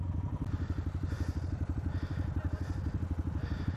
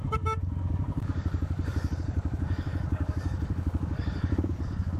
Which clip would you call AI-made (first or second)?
second